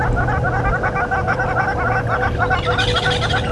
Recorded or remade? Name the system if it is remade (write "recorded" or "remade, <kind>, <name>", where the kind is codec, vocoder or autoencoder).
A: recorded